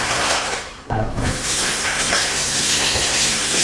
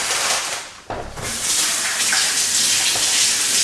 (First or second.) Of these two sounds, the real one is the second